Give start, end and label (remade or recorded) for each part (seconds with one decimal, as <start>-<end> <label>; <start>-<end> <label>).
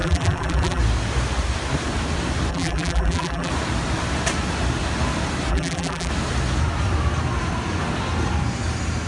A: 0.0-0.8 remade; 0.8-2.5 recorded; 2.5-3.5 remade; 3.5-5.5 recorded; 5.5-6.1 remade; 6.1-9.1 recorded